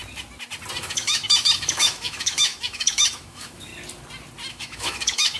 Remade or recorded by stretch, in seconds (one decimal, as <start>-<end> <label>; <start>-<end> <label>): 0.0-0.8 recorded; 0.8-3.7 remade; 3.7-4.5 recorded; 4.5-5.4 remade